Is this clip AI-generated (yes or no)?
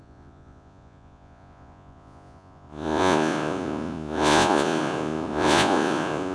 yes